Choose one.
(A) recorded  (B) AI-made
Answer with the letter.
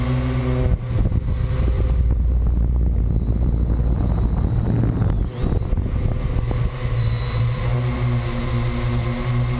A